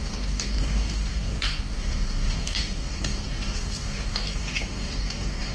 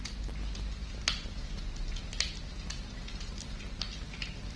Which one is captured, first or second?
second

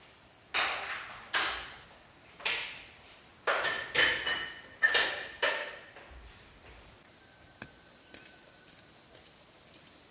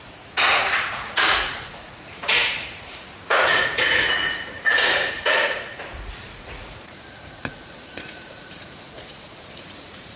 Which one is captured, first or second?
first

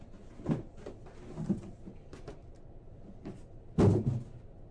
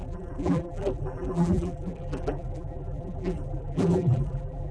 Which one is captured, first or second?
first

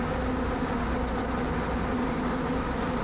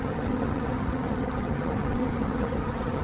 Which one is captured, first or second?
first